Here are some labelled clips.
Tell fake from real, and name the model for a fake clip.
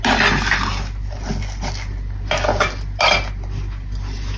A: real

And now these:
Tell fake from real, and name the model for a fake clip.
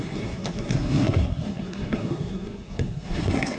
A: fake, codec, SNAC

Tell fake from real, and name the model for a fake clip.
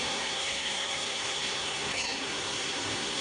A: fake, codec, SNAC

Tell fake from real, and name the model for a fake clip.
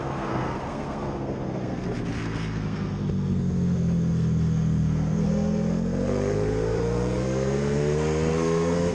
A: fake, codec, SNAC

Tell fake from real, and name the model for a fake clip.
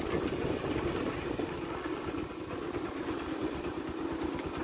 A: real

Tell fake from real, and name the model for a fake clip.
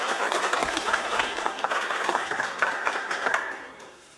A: fake, codec, SNAC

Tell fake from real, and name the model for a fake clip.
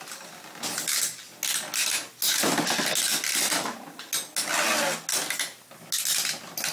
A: real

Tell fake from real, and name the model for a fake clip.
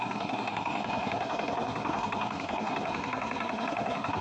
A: fake, codec, SNAC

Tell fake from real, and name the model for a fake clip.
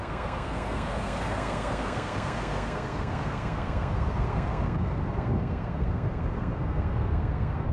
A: fake, codec, SNAC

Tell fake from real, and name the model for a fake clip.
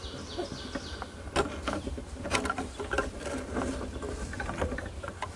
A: real